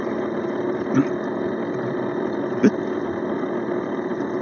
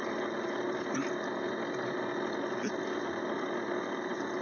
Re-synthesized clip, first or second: first